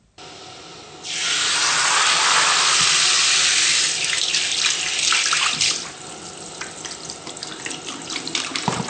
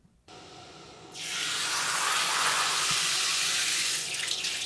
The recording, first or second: first